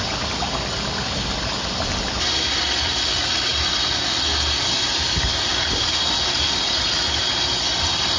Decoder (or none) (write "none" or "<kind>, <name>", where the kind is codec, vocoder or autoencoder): none